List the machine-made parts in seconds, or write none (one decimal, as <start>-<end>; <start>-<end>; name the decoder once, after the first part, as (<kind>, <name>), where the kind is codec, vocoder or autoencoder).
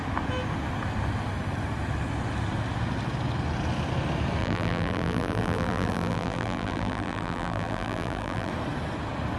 4.4-8.5 (vocoder, BigVGAN v2)